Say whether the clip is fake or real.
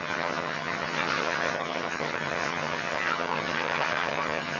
fake